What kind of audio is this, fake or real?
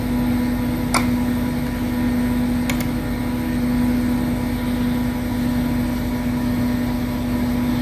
real